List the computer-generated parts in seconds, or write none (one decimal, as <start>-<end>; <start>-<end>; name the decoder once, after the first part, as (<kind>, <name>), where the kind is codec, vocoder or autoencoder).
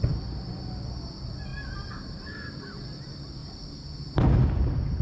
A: none